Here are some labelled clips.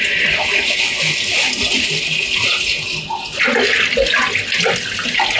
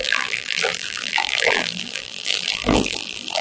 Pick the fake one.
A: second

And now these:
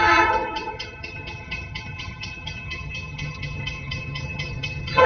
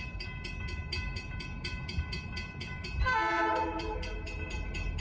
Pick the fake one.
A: first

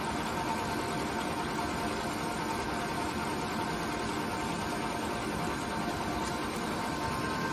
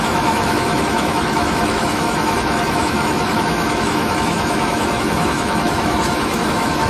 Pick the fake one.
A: second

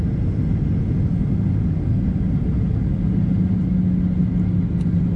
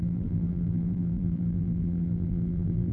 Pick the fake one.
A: second